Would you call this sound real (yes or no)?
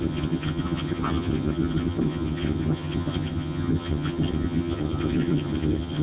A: no